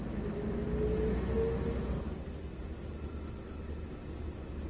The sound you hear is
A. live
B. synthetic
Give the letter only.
A